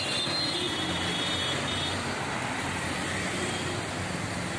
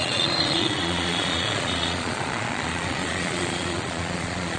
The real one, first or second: first